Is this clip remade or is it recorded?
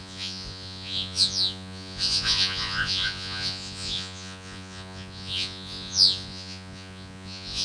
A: remade